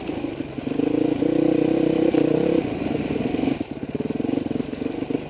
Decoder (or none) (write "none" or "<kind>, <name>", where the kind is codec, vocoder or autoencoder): none